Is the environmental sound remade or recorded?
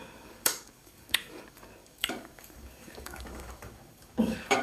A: remade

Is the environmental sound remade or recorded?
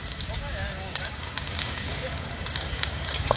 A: remade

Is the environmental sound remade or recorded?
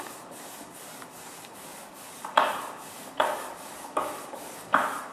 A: remade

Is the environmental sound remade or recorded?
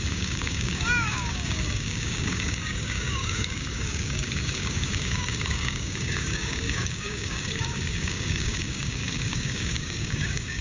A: remade